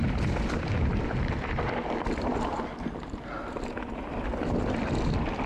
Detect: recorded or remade remade